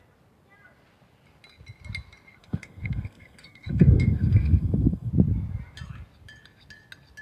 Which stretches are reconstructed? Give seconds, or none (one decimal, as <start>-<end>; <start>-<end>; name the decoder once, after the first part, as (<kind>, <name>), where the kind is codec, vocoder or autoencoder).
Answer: 2.4-5.1 (codec, SNAC)